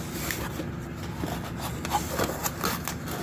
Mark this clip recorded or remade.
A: recorded